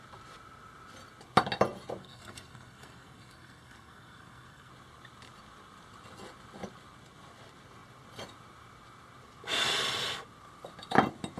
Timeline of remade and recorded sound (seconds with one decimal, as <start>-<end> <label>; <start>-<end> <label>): 0.0-2.0 recorded; 2.0-4.7 remade; 4.7-11.4 recorded